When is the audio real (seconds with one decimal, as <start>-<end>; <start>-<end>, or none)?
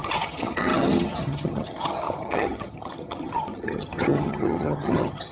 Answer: none